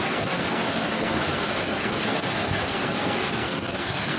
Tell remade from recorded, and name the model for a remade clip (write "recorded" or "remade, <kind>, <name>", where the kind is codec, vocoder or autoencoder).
remade, codec, SNAC